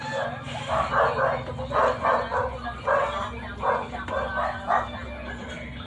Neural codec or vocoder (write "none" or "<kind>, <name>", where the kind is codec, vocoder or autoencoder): none